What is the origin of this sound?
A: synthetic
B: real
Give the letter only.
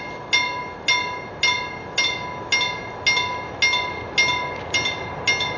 B